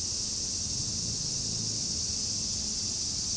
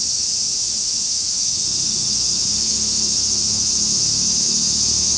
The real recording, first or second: first